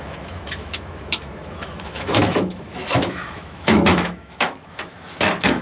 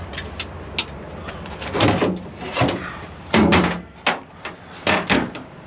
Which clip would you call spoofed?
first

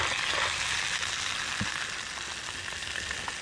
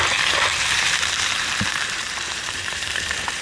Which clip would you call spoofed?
second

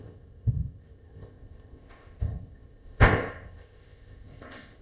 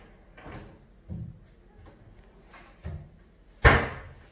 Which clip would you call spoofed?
first